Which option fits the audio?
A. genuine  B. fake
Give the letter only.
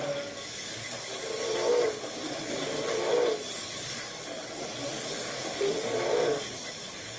A